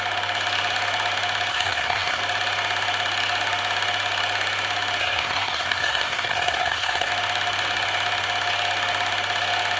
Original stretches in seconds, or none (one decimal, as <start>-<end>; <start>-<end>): 0.0-1.5; 2.2-5.0; 7.1-9.8